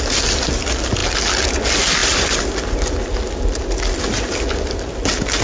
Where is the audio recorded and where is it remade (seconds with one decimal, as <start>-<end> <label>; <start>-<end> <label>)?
0.0-5.4 recorded